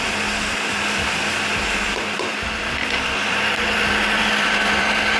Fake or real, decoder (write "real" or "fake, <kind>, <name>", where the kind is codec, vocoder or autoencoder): fake, vocoder, BigVGAN v2